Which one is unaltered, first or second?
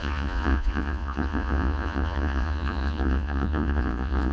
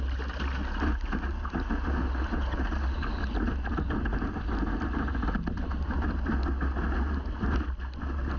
second